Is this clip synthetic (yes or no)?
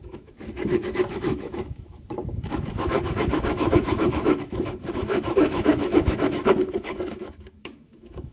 yes